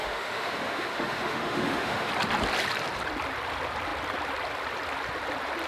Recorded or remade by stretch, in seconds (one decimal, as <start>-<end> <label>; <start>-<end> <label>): 0.0-2.1 remade; 2.1-5.7 recorded